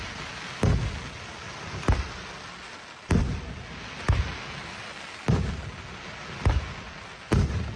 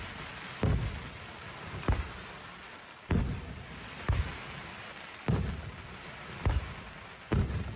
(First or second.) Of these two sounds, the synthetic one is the second